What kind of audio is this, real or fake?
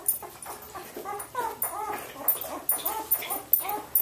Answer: real